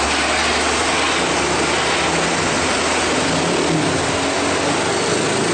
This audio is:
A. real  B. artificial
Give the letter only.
A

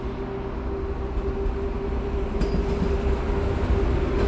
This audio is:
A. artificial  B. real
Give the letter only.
B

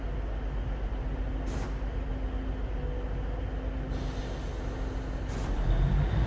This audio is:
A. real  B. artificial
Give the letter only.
A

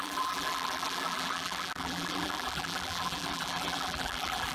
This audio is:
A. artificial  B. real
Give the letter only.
A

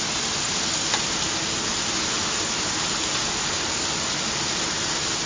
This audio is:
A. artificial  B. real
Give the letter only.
B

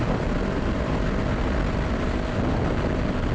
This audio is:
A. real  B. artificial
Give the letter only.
A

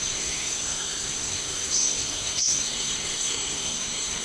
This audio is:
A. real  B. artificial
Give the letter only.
B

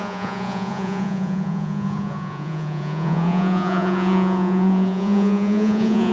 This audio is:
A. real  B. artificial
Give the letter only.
B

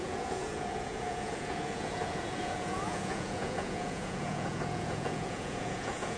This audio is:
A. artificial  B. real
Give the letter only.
A